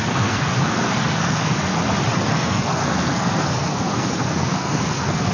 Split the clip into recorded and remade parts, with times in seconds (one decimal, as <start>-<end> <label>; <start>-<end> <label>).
0.0-1.7 remade; 1.7-2.3 recorded; 2.3-5.3 remade